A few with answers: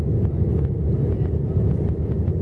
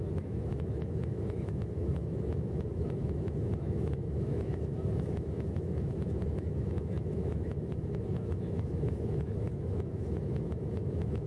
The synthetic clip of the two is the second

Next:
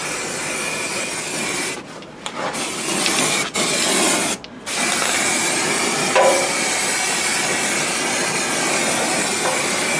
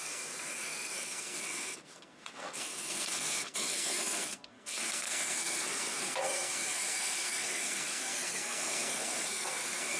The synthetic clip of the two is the second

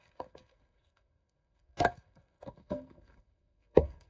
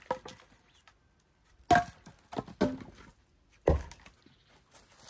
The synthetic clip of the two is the first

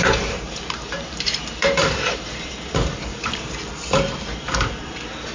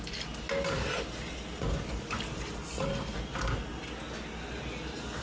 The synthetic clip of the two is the first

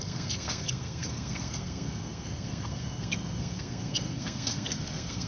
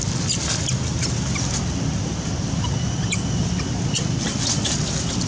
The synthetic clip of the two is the first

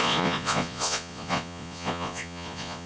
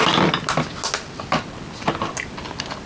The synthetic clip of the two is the first